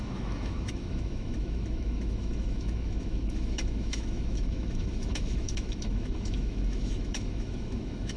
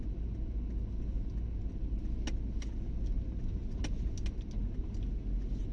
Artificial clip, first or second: first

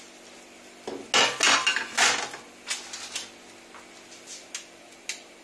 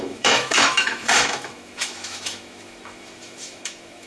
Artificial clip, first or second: second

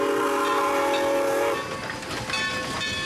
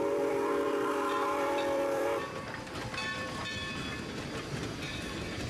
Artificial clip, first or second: second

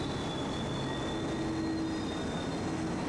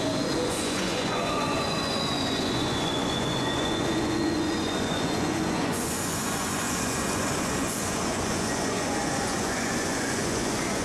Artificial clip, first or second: second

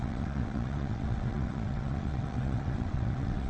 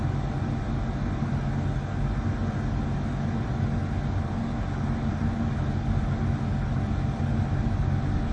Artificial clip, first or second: first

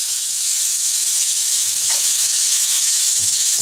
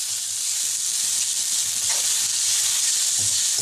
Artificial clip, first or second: first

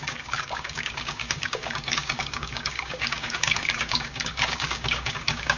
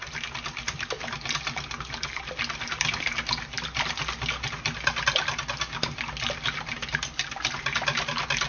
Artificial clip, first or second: first